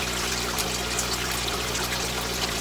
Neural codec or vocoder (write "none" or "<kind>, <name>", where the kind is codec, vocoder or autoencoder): none